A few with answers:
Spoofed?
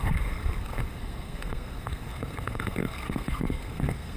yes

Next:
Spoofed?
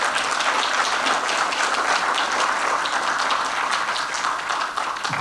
no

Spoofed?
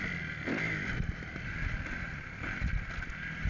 no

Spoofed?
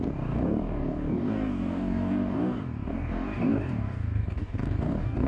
yes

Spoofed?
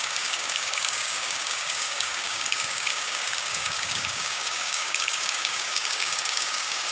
yes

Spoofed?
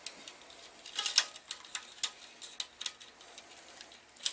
no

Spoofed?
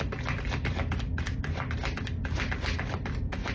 no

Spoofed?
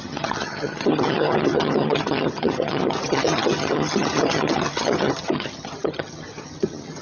yes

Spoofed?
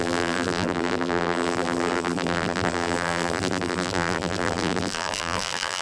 yes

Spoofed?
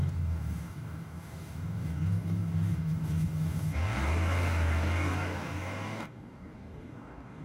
yes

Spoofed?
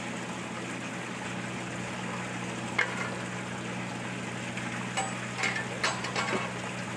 no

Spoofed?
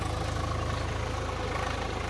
no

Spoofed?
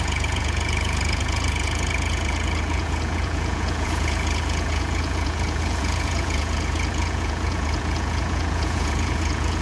yes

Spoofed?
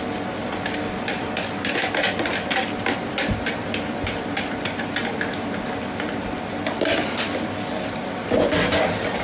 no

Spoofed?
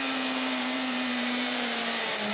yes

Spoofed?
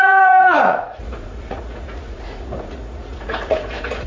yes